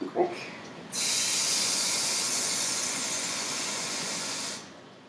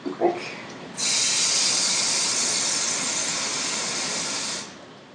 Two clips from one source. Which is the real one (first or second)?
second